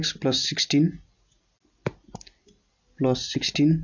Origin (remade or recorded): recorded